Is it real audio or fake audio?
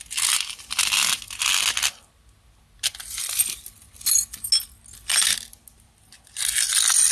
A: real